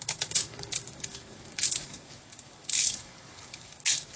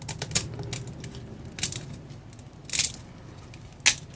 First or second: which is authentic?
second